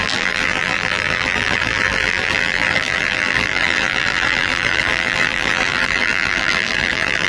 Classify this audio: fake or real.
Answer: fake